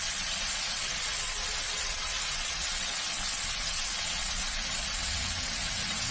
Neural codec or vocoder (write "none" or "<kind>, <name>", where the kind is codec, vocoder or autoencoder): vocoder, WaveNeXt